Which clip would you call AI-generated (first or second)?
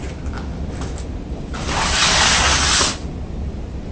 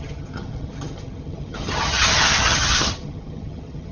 second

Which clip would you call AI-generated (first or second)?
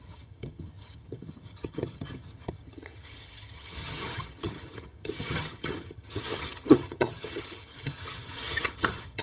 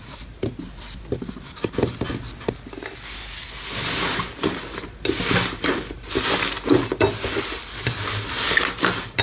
first